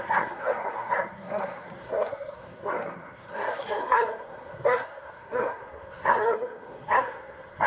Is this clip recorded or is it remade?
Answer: remade